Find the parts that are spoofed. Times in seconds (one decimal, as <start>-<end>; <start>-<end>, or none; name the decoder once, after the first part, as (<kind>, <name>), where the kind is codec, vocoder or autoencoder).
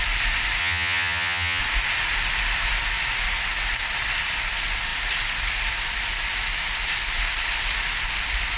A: 0.6-1.6 (vocoder, HiFi-GAN)